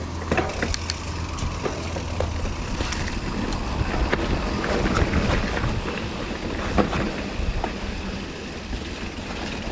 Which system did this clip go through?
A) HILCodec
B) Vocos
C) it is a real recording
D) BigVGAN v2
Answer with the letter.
C